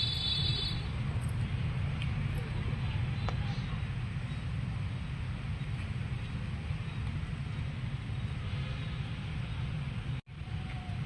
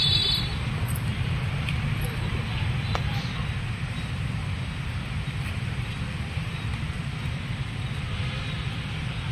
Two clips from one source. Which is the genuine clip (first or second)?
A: first